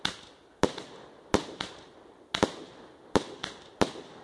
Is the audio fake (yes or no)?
no